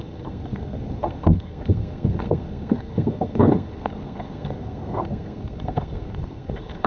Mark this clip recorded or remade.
remade